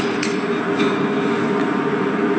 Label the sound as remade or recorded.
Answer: recorded